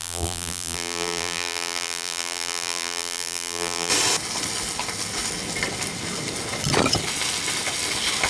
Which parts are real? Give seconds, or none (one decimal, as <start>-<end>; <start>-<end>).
3.9-8.3